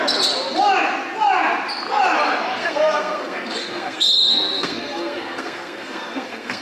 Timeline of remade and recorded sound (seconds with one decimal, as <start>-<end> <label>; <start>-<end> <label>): 0.0-2.6 recorded; 2.6-6.6 remade